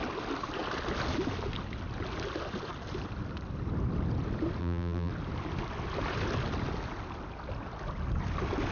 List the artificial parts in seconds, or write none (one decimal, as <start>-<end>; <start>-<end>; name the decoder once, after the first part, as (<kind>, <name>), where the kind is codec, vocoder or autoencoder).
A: 4.6-5.1 (vocoder, BigVGAN v2)